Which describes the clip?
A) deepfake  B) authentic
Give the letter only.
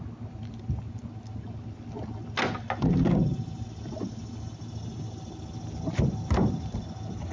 B